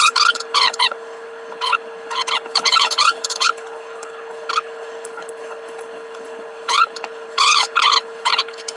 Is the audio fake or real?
fake